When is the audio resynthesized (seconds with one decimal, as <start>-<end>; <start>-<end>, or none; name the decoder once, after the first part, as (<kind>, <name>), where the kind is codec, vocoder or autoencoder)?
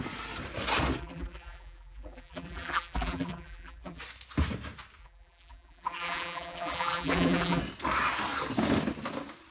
1.0-4.0 (vocoder, BigVGAN v2); 5.0-7.6